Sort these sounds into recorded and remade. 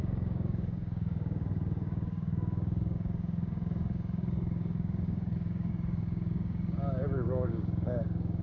remade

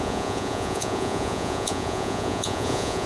remade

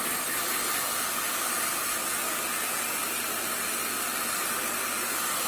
recorded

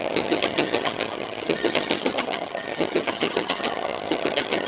remade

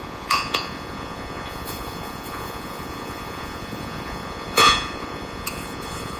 remade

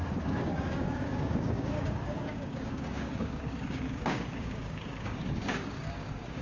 remade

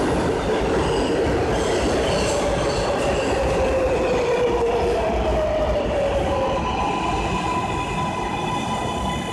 recorded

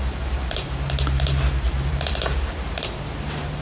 remade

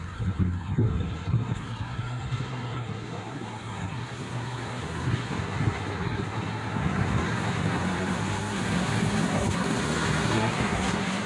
remade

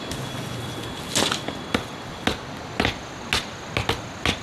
recorded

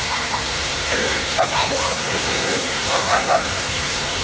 remade